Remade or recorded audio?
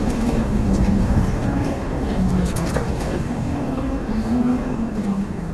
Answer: remade